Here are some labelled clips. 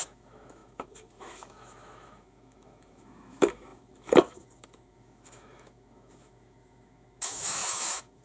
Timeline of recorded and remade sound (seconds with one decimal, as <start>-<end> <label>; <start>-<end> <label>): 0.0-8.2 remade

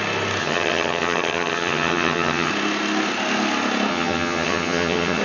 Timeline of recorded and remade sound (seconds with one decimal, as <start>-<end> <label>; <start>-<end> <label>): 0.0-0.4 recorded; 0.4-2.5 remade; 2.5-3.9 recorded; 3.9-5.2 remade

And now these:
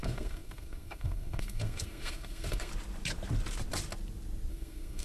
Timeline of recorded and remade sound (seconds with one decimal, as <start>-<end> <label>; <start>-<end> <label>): 0.0-2.7 remade; 2.7-4.5 recorded; 4.5-5.0 remade

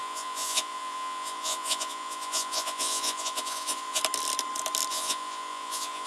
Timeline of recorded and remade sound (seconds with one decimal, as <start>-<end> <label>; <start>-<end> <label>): 0.0-4.0 remade; 4.0-4.9 recorded; 4.9-6.1 remade

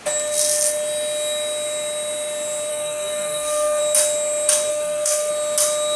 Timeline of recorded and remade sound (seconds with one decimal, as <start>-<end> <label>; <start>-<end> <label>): 0.0-2.7 recorded; 2.7-3.8 remade; 3.8-4.7 recorded; 4.7-5.3 remade; 5.3-6.0 recorded

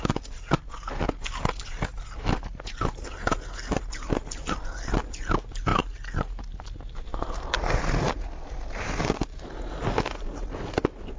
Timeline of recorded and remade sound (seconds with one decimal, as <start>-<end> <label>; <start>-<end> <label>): 0.0-11.2 recorded

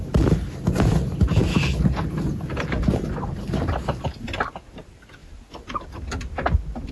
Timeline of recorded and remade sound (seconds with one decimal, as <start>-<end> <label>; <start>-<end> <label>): 0.0-6.9 recorded

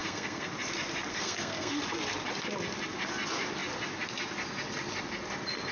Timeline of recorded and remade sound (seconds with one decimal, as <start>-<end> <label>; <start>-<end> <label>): 0.0-0.5 remade; 0.5-1.1 recorded; 1.1-1.7 remade; 1.7-5.7 recorded